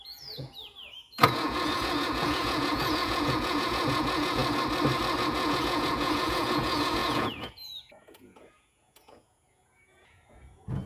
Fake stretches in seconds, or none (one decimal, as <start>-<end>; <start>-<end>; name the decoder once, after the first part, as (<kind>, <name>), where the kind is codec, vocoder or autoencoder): 0.0-4.4 (vocoder, Vocos); 5.2-10.9